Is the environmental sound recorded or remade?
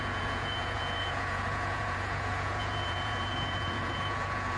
remade